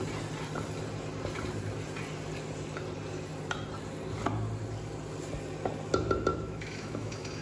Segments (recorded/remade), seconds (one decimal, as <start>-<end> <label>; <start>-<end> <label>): 0.0-6.3 recorded; 6.3-7.4 remade